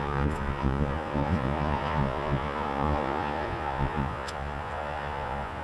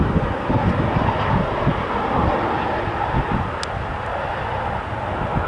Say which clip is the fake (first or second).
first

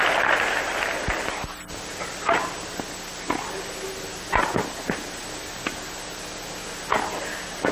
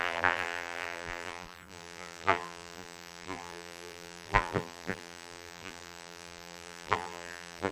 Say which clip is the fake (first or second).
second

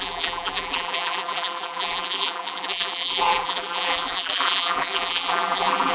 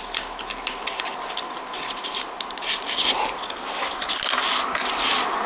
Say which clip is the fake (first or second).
first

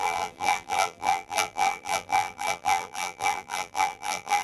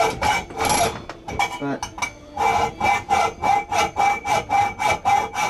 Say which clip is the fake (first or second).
first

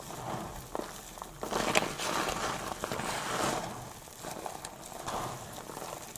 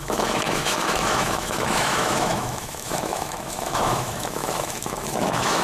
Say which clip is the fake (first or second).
second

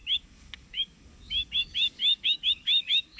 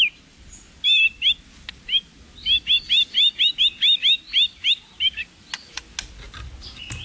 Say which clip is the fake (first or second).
first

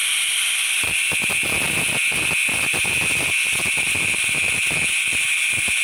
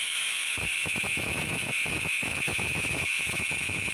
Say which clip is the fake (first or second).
second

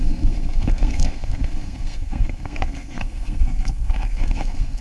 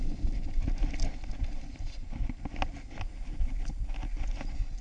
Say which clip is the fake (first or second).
first